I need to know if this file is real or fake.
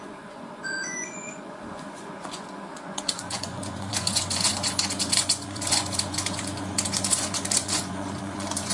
fake